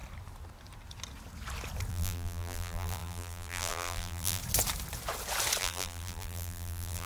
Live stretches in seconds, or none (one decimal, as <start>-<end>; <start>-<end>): 0.0-1.9; 4.4-5.6

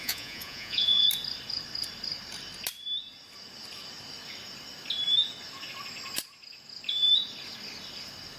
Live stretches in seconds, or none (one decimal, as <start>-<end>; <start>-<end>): 1.1-8.4

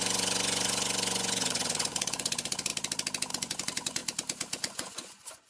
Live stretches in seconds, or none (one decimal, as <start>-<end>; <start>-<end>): 2.7-3.3; 4.0-4.6

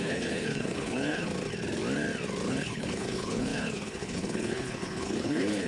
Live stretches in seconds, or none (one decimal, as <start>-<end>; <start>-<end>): 1.3-2.5

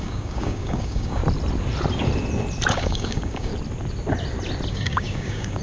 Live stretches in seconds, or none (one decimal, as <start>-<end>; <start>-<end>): 1.2-2.7; 3.5-4.7